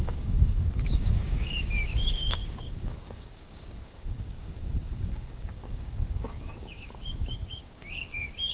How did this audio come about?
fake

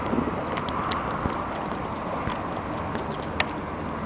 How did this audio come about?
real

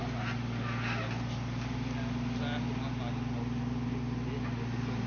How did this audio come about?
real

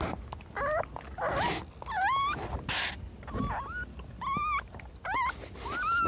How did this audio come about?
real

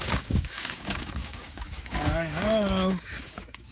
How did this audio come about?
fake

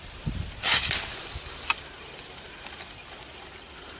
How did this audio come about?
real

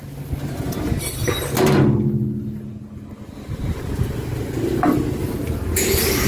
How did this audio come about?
real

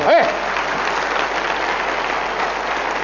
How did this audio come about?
real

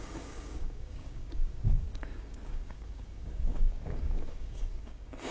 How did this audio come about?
fake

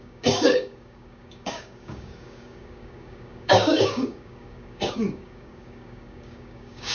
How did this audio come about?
fake